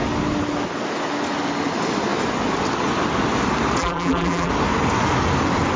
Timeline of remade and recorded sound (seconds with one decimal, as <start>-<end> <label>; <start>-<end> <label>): 0.0-3.8 recorded; 3.8-4.5 remade; 4.5-5.8 recorded